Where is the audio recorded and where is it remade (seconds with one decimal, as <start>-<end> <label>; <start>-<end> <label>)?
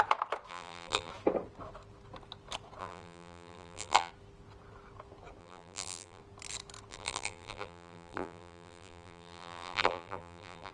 0.0-0.5 recorded; 0.5-1.1 remade; 1.1-2.8 recorded; 2.8-4.1 remade; 4.1-5.4 recorded; 5.4-6.2 remade; 6.2-6.9 recorded; 6.9-10.7 remade